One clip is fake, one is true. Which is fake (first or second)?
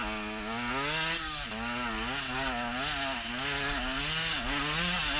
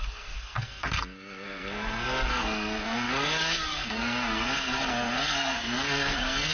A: second